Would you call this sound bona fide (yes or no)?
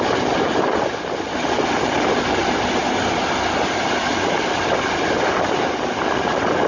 yes